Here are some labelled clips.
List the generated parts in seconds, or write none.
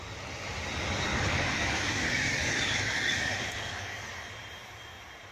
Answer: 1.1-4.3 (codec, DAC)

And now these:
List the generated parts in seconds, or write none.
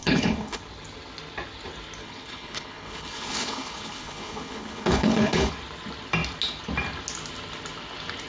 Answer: 0.0-0.6 (codec, HILCodec); 2.0-5.5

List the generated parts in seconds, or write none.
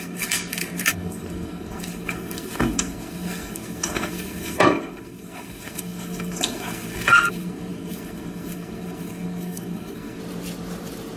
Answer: 0.0-10.2 (codec, SNAC)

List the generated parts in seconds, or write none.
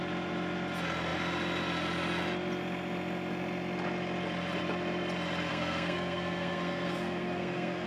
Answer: 5.5-7.9 (codec, SNAC)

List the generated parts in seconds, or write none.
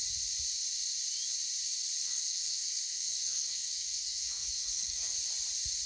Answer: 2.1-5.2 (codec, SNAC)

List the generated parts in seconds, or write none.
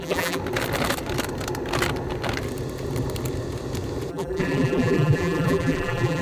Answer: 0.0-0.4 (vocoder, BigVGAN v2); 4.1-6.2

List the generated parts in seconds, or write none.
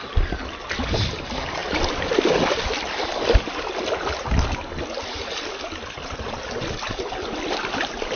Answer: none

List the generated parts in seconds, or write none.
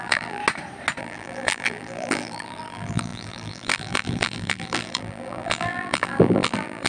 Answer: 0.0-0.4 (vocoder, BigVGAN v2); 1.0-6.9